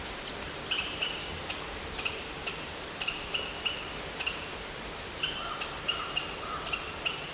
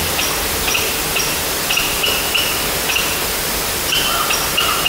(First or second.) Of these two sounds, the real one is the second